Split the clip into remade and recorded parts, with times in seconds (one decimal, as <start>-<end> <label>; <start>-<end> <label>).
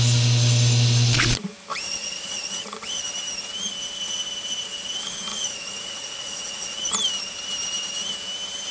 0.0-1.7 recorded; 1.7-3.0 remade; 3.0-5.3 recorded; 5.3-6.9 remade; 6.9-8.7 recorded